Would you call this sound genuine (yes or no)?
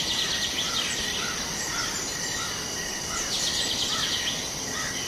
yes